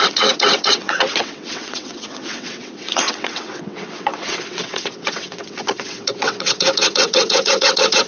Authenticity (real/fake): fake